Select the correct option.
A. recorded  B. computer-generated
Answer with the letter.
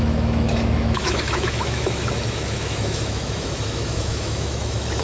B